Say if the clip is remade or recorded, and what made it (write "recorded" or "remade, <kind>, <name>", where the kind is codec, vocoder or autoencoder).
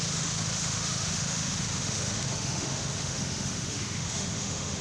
remade, autoencoder, DAC-VAE